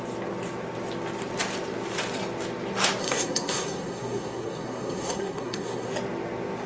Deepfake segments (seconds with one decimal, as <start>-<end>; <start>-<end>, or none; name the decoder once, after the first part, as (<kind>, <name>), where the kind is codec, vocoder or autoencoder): 3.0-5.9 (codec, SNAC)